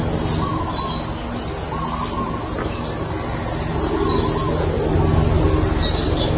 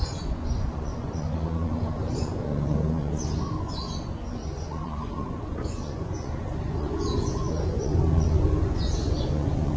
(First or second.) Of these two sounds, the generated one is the second